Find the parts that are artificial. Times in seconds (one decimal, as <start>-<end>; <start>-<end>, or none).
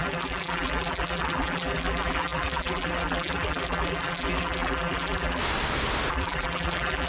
0.0-5.4; 6.1-7.1